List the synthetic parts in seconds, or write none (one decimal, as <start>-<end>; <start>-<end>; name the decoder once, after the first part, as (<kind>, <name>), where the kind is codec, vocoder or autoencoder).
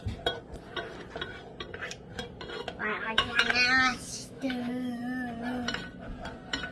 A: 2.9-3.5 (autoencoder, DAC-VAE); 3.9-5.0